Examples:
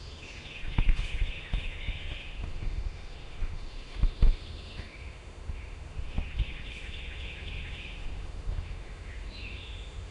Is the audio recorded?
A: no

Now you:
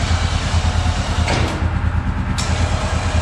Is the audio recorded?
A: yes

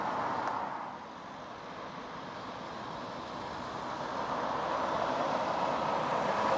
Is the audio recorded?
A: yes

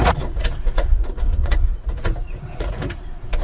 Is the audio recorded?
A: no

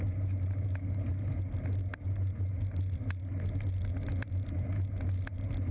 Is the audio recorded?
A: yes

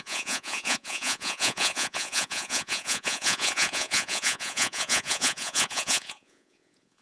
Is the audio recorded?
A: no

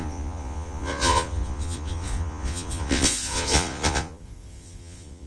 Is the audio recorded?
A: no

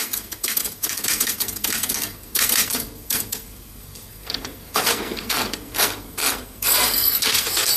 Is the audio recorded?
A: no